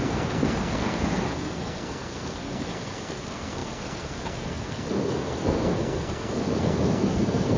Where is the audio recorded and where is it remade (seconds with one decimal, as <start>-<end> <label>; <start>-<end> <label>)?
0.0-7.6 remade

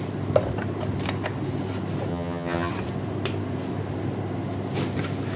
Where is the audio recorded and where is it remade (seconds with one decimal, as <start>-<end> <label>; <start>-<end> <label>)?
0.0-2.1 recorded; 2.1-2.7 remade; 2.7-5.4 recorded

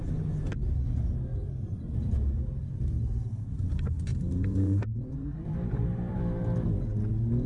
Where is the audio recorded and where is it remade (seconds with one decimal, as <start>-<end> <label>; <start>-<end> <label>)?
0.0-1.3 recorded; 1.3-1.9 remade; 1.9-4.1 recorded; 4.1-6.2 remade; 6.2-7.5 recorded

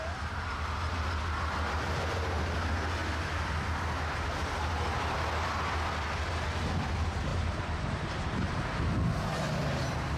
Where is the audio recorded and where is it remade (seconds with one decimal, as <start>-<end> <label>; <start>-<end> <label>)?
0.0-7.3 recorded; 7.3-8.1 remade; 8.1-10.2 recorded